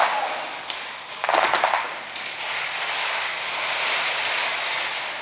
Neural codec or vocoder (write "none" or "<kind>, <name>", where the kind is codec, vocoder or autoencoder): none